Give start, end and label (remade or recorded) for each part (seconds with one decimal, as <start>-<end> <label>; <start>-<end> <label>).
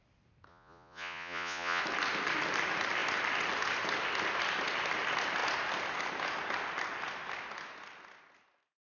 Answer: 0.0-0.5 recorded; 0.5-1.8 remade; 1.8-9.0 recorded